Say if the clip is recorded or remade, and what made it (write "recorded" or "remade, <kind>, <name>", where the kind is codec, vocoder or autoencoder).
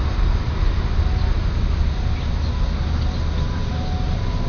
recorded